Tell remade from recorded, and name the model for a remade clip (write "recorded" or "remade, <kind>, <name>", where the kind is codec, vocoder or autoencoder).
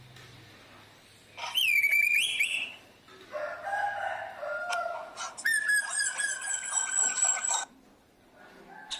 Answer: recorded